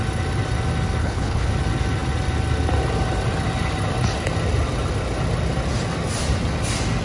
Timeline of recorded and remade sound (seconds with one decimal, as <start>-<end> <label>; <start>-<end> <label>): 0.0-1.0 recorded; 1.0-1.5 remade; 1.5-7.0 recorded

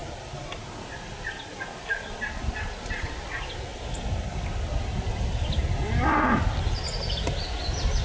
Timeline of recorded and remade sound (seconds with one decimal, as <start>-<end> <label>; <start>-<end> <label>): 0.0-8.0 recorded